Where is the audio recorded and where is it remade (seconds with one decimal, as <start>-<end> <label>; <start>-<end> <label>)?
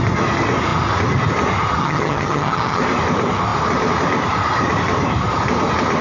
0.0-1.8 recorded; 1.8-2.8 remade; 2.8-6.0 recorded